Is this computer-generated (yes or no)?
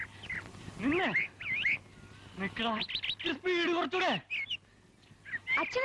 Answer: no